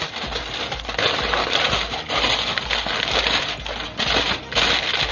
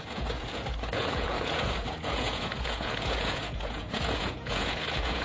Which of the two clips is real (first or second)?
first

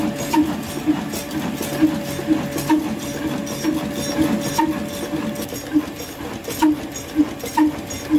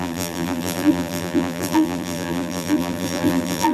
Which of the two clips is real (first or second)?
first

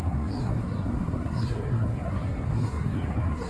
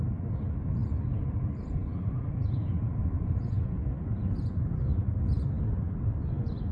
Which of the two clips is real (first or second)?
second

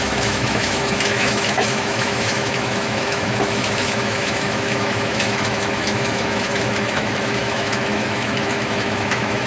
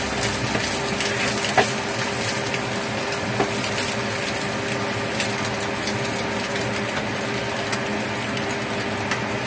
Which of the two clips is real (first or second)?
second